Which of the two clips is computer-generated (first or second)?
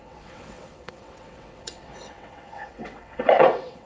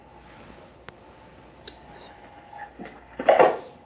first